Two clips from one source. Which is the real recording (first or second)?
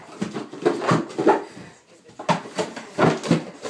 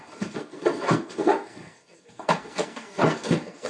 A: first